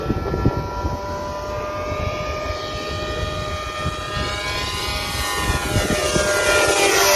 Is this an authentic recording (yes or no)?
yes